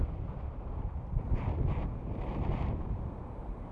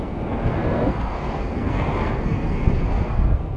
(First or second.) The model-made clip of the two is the second